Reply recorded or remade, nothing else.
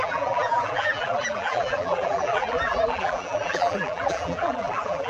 remade